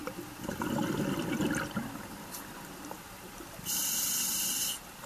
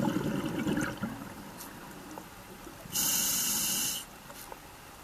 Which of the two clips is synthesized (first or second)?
first